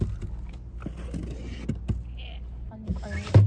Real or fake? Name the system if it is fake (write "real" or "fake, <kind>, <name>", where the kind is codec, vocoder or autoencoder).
real